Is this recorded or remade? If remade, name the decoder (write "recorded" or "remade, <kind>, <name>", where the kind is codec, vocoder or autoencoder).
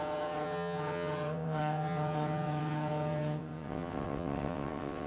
remade, vocoder, WaveNeXt